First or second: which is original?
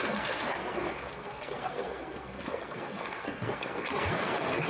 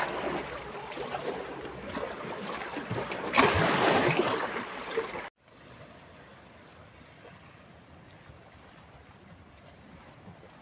second